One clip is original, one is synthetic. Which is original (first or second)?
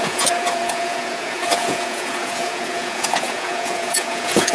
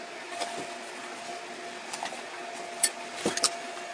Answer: second